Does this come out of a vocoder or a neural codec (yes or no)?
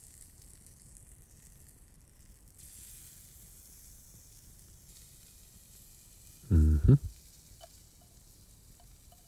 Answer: no